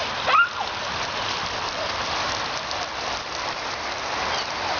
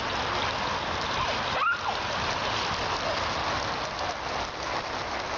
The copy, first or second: first